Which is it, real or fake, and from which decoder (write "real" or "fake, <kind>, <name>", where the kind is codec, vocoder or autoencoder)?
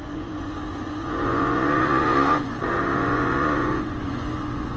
fake, vocoder, Vocos